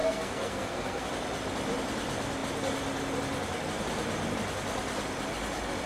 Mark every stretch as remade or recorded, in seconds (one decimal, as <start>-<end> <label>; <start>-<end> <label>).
0.0-1.1 remade; 1.1-5.9 recorded